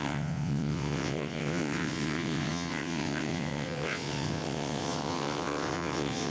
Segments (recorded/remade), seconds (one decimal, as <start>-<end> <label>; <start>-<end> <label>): 0.0-6.3 remade